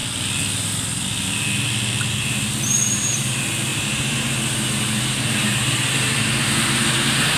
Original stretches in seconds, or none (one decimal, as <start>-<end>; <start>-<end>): 0.0-2.1